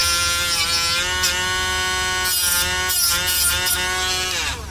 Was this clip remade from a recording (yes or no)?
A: no